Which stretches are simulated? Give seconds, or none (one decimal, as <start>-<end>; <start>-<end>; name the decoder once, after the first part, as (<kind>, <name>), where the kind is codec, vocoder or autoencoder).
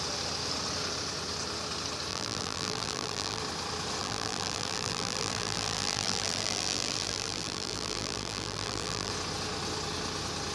2.1-3.4 (vocoder, BigVGAN v2); 4.0-9.1